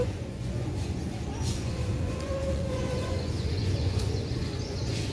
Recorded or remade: remade